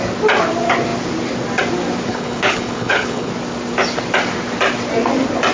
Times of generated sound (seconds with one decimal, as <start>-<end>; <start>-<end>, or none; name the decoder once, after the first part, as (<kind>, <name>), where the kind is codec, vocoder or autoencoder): 2.1-3.3 (codec, HILCodec)